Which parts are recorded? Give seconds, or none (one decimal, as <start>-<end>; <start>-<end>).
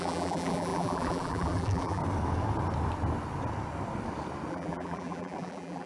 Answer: 2.0-4.5